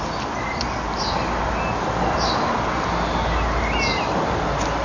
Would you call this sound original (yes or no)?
yes